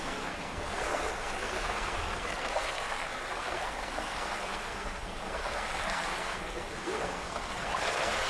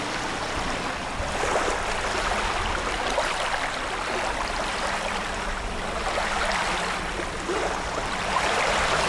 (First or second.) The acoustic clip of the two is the second